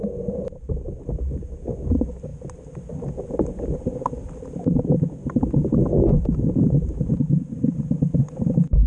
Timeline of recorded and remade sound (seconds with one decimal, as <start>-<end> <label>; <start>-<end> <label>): 0.0-8.9 recorded